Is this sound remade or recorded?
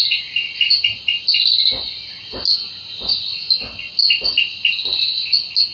recorded